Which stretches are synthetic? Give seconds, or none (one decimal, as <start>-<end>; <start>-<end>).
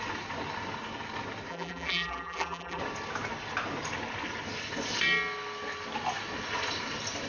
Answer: 1.5-2.8